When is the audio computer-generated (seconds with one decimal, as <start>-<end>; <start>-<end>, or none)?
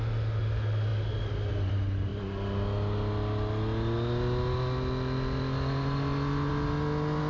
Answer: none